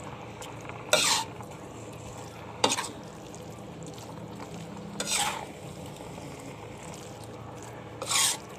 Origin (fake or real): real